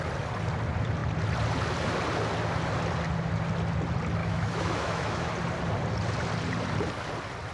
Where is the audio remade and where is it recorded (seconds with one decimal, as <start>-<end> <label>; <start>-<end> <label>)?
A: 0.0-4.2 recorded; 4.2-5.3 remade; 5.3-7.5 recorded